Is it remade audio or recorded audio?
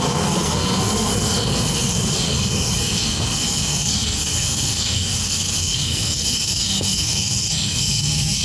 remade